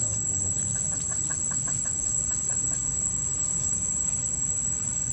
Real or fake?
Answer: real